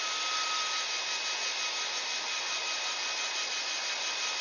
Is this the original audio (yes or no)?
no